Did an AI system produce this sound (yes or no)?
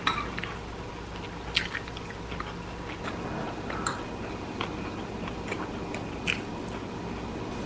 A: no